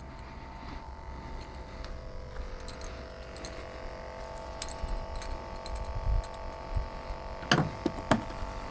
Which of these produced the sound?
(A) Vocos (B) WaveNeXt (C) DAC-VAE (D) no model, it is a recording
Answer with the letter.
D